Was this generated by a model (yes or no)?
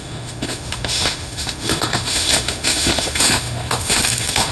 yes